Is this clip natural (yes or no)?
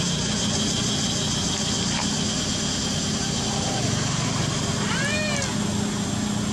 yes